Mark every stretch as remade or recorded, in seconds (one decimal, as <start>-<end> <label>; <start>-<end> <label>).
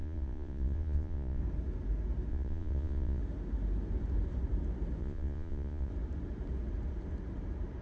0.0-1.4 remade; 1.4-2.3 recorded; 2.3-3.2 remade; 3.2-5.0 recorded; 5.0-5.9 remade; 5.9-7.8 recorded